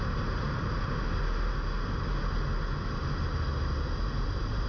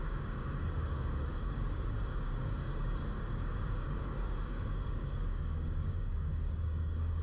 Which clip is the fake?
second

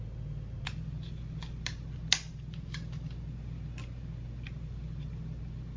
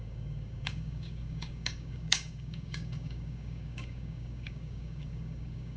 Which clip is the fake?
second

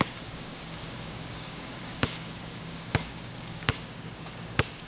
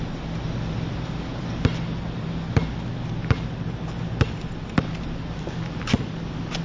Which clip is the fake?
first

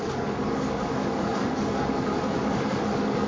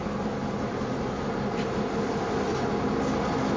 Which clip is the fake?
first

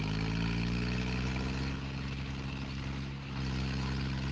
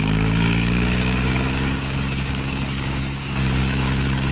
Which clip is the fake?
second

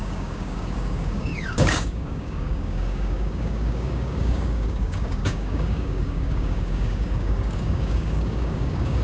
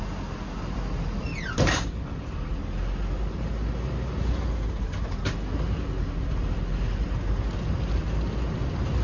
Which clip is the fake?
first